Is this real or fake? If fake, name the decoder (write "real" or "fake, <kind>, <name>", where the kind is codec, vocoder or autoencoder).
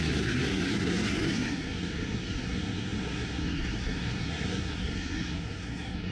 fake, codec, SNAC